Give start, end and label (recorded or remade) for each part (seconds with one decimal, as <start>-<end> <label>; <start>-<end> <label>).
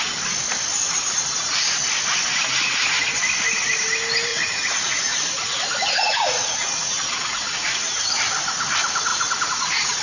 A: 0.0-4.3 recorded; 4.3-8.2 remade; 8.2-9.1 recorded; 9.1-10.0 remade